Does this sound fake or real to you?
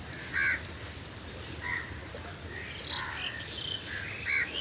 real